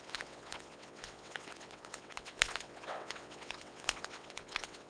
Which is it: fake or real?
fake